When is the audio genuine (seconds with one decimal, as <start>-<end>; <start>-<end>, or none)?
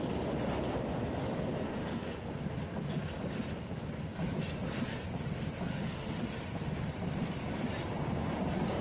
0.0-5.7; 6.2-8.8